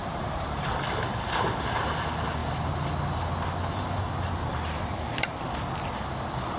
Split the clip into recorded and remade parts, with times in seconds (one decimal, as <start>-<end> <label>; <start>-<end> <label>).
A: 0.0-1.8 remade; 1.8-4.5 recorded; 4.5-5.4 remade; 5.4-6.6 recorded